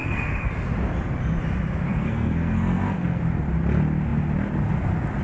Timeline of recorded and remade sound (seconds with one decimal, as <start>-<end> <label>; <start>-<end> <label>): 0.0-0.5 remade; 0.5-1.9 recorded; 1.9-3.2 remade; 3.2-5.2 recorded